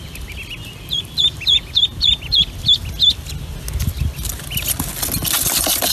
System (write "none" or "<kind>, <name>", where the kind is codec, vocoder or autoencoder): none